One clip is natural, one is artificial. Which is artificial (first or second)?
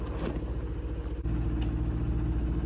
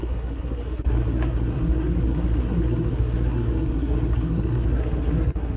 second